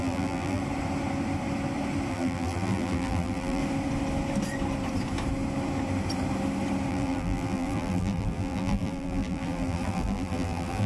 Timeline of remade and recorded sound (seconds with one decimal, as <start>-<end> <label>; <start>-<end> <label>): 0.0-0.6 remade; 0.6-2.1 recorded; 2.1-3.6 remade; 3.6-6.9 recorded; 6.9-10.9 remade